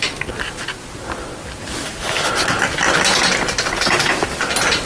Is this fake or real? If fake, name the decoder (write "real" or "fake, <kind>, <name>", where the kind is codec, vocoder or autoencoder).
real